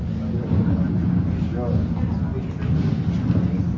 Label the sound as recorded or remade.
recorded